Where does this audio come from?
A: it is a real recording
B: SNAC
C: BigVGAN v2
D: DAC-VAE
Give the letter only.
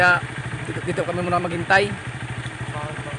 C